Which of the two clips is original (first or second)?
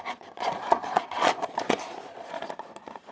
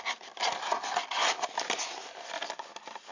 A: second